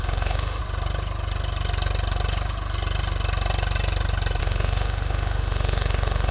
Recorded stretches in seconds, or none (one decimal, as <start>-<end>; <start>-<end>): 0.6-4.4